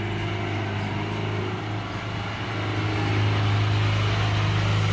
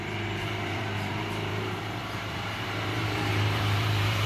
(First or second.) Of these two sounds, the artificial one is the second